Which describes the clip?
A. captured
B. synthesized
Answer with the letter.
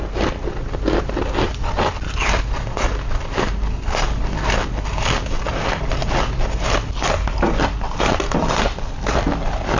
A